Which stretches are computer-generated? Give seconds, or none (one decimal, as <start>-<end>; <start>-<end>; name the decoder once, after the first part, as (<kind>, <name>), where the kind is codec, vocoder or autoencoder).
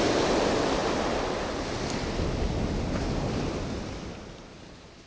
none